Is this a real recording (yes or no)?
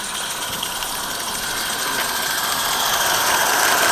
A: yes